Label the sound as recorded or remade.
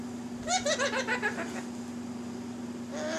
recorded